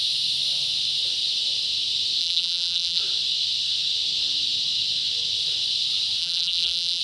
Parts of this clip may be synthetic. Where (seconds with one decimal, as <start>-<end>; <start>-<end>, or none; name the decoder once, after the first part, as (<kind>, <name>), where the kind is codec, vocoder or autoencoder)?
2.2-3.0 (vocoder, BigVGAN v2); 6.2-7.0